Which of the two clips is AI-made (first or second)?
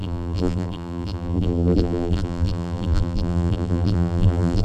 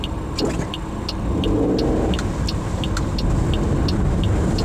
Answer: first